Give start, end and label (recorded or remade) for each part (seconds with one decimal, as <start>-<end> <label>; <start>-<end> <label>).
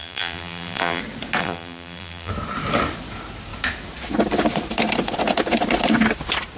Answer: 0.0-1.0 remade; 1.0-1.4 recorded; 1.4-2.3 remade; 2.3-6.6 recorded